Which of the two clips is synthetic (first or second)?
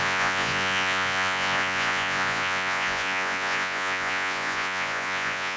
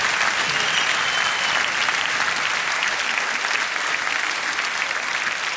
first